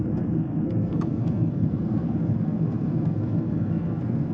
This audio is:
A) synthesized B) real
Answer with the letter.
A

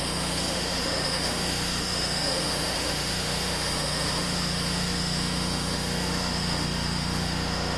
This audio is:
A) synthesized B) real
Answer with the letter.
A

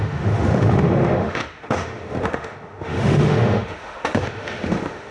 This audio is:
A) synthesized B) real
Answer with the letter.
A